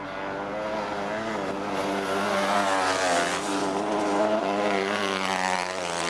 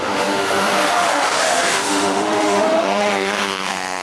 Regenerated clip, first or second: second